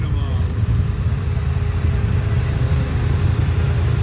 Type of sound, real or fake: real